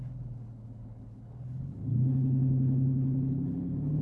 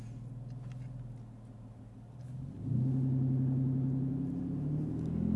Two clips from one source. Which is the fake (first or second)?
first